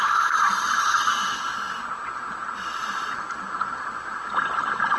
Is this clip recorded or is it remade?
recorded